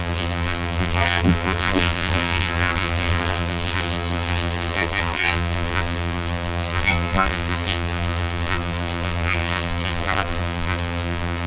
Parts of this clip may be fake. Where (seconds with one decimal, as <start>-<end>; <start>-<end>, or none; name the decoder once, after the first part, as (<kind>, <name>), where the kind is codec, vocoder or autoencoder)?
0.0-11.5 (vocoder, BigVGAN v2)